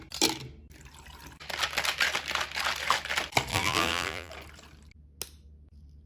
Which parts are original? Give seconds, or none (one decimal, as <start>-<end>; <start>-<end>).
0.0-3.5; 4.3-6.1